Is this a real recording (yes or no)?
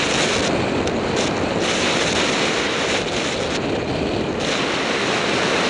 yes